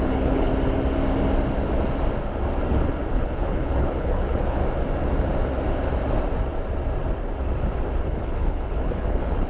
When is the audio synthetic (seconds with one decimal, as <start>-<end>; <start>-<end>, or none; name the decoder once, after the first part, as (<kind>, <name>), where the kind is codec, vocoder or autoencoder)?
0.0-0.5 (codec, HILCodec); 3.1-4.6; 8.0-9.5

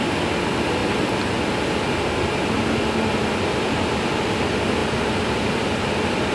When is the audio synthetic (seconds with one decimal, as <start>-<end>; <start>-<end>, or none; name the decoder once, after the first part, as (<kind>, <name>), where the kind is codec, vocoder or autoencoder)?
none